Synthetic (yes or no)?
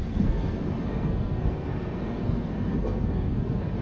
yes